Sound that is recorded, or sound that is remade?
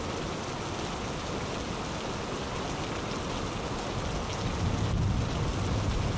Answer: recorded